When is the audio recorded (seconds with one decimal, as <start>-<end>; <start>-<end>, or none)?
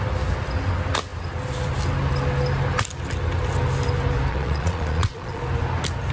0.0-4.3; 5.4-6.1